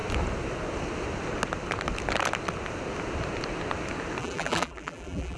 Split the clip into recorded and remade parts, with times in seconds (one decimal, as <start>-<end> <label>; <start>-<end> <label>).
0.0-4.2 recorded; 4.2-5.4 remade